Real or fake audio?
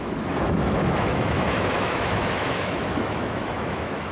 fake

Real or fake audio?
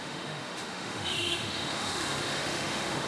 fake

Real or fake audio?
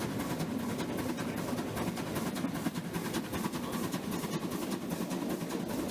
real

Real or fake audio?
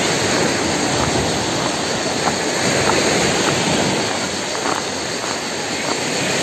real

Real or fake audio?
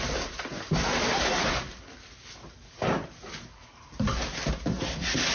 real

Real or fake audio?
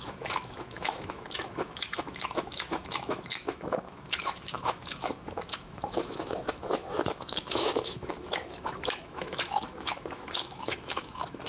fake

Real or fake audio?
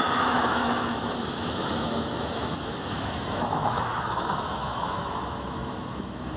fake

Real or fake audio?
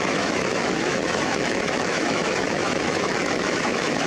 fake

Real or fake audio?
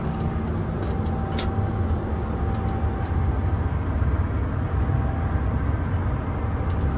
real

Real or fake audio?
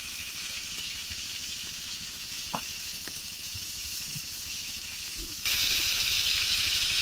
fake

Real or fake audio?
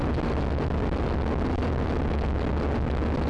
real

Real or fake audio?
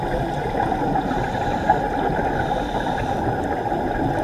real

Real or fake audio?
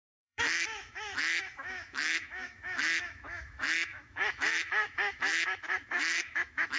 fake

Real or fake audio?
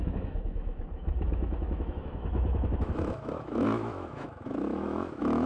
fake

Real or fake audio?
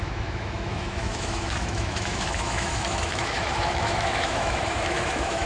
fake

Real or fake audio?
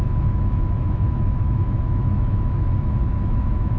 fake